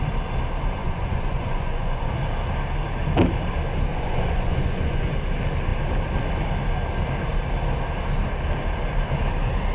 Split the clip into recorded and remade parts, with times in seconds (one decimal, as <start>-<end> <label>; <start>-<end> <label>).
0.0-0.8 recorded; 0.8-2.1 remade; 2.1-3.9 recorded; 3.9-5.1 remade; 5.1-9.7 recorded